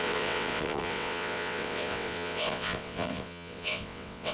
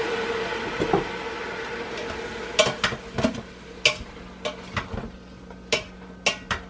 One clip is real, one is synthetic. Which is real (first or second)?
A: second